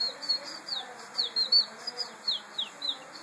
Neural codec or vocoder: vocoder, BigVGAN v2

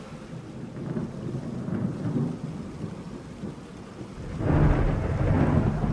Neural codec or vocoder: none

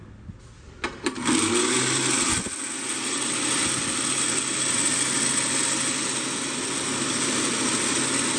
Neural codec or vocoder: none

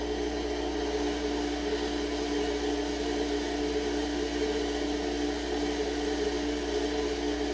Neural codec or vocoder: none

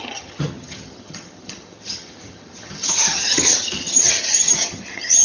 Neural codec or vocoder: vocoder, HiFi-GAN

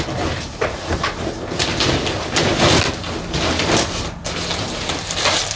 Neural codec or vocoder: none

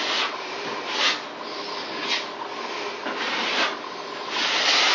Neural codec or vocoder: none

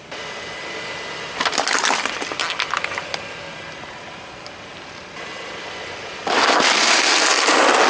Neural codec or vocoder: none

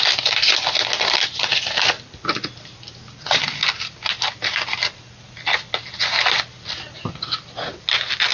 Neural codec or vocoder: none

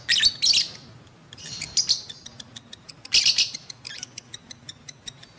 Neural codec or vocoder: none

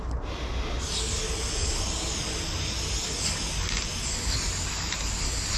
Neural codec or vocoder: none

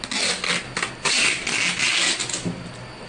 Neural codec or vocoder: none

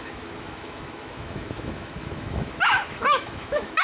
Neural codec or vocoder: autoencoder, DAC-VAE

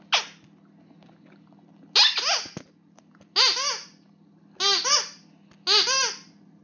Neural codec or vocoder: none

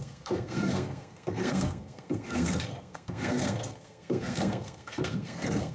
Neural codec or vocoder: codec, SNAC